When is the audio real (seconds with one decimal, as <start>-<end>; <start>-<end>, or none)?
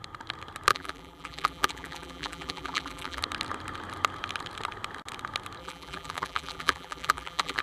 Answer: 0.0-0.7; 3.2-5.6